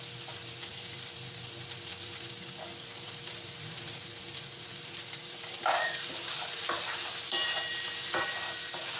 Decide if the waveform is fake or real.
fake